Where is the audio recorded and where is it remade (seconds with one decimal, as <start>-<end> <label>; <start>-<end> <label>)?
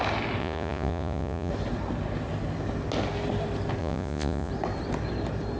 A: 0.0-0.4 recorded; 0.4-1.5 remade; 1.5-3.8 recorded; 3.8-4.5 remade; 4.5-5.6 recorded